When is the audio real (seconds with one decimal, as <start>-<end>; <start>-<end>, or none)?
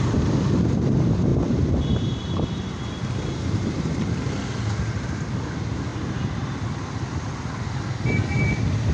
0.0-1.3; 4.3-5.9; 6.4-8.9